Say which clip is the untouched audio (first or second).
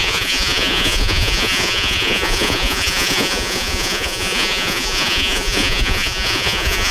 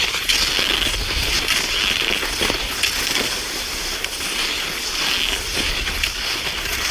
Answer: second